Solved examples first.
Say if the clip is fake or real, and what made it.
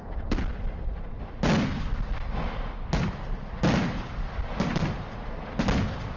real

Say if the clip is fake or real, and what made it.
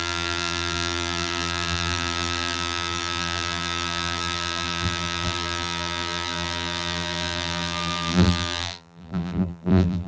fake, vocoder, BigVGAN v2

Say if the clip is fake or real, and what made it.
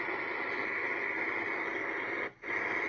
real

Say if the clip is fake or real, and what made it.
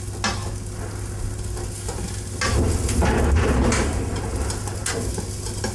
real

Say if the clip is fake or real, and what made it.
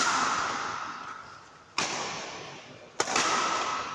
real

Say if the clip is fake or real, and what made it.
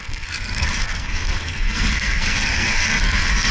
fake, codec, SNAC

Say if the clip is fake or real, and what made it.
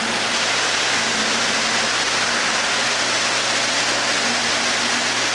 real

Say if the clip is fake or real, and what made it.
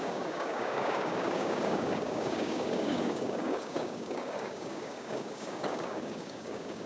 fake, codec, DAC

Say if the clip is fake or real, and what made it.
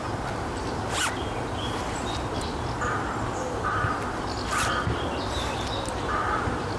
real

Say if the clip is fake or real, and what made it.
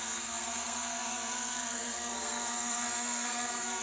fake, codec, SNAC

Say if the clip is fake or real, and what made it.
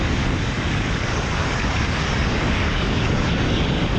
fake, codec, DAC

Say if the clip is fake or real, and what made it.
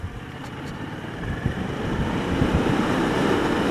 fake, vocoder, BigVGAN v2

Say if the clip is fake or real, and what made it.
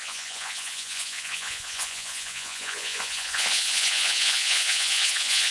fake, vocoder, Vocos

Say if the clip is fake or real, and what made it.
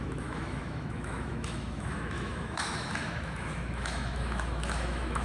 fake, autoencoder, DAC-VAE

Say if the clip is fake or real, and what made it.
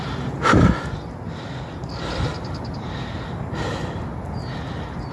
real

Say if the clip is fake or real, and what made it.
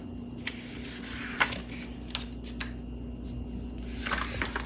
real